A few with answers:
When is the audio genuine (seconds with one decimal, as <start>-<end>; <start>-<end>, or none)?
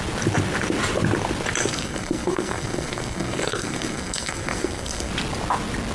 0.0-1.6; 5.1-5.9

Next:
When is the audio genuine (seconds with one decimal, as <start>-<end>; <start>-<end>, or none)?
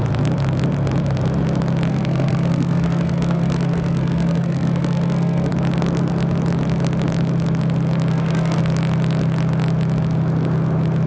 0.0-1.9; 5.5-8.1; 8.6-11.1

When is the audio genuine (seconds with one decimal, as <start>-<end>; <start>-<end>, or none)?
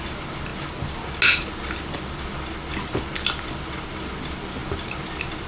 0.0-5.5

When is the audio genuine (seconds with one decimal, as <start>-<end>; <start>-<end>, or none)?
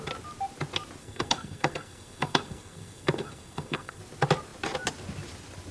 0.0-1.0; 4.0-5.7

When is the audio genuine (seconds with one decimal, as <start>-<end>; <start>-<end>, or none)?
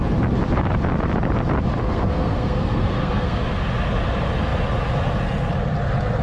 0.0-1.8; 3.4-6.2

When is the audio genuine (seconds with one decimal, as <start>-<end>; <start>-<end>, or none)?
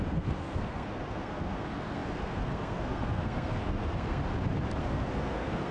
4.2-4.8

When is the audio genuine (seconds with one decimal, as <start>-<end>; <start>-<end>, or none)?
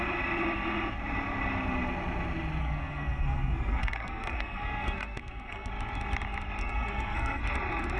0.0-2.6; 5.7-6.6; 7.4-8.0